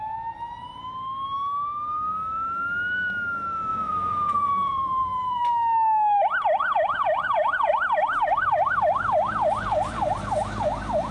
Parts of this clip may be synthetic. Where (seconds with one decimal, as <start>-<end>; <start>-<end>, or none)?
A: 3.7-5.4; 6.6-7.7